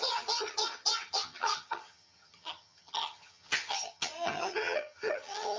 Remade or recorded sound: remade